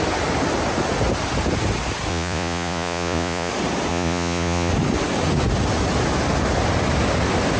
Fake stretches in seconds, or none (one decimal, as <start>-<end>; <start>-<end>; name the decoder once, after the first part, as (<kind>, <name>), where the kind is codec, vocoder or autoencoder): 2.1-3.5 (vocoder, Vocos); 3.9-4.7